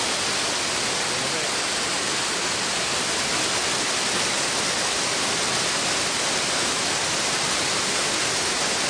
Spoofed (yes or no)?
no